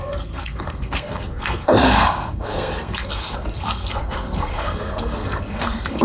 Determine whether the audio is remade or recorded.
remade